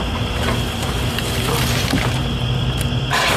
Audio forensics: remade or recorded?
remade